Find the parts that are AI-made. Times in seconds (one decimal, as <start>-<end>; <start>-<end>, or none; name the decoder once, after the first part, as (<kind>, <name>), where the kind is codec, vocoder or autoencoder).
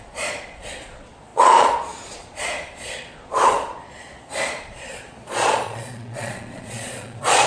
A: 0.0-7.5 (vocoder, Vocos)